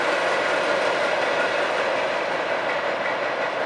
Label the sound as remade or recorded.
recorded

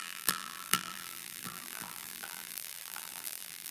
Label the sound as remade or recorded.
remade